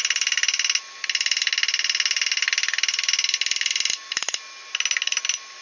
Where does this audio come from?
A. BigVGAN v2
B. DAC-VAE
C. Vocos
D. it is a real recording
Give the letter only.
D